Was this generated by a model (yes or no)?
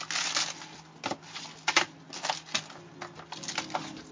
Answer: no